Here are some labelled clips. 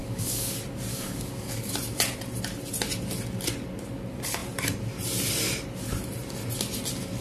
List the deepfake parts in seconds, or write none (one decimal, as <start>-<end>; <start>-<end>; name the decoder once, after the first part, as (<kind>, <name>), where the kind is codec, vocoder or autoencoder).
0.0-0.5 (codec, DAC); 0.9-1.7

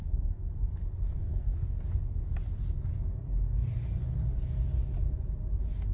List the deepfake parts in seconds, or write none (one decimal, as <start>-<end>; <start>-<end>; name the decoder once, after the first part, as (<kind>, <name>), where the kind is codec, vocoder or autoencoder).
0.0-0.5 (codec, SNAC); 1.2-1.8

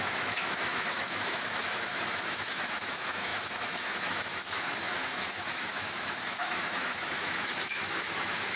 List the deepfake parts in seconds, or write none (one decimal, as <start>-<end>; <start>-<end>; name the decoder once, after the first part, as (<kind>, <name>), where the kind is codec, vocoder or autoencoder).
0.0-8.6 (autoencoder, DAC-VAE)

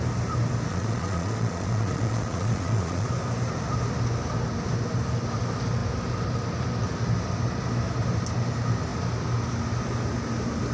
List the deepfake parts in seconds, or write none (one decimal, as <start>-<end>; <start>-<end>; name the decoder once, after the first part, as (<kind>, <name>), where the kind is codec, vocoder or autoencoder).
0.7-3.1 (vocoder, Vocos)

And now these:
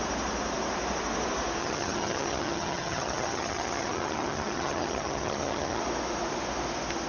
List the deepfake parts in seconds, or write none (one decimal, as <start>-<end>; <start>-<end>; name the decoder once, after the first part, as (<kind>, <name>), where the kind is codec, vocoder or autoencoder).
1.6-5.8 (vocoder, HiFi-GAN)

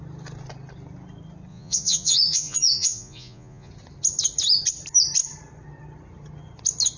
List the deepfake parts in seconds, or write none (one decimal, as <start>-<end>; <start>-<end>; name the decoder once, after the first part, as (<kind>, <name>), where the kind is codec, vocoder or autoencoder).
1.5-3.7 (vocoder, Vocos)

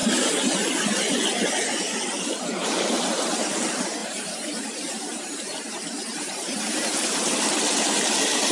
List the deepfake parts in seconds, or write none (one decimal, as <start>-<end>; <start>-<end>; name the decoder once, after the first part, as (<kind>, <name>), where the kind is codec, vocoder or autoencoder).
4.0-7.3 (vocoder, BigVGAN v2)